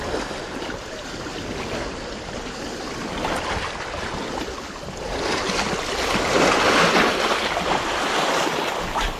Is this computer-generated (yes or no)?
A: no